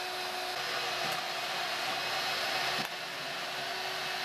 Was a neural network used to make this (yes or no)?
no